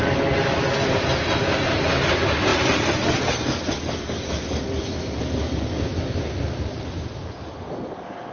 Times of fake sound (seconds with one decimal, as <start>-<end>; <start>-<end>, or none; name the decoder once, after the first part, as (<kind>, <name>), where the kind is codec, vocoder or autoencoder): none